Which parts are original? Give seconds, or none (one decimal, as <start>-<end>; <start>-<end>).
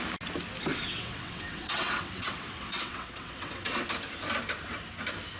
0.0-0.7; 3.9-5.4